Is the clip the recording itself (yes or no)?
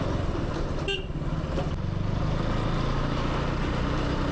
yes